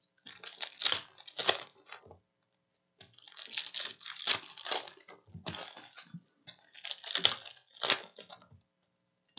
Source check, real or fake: real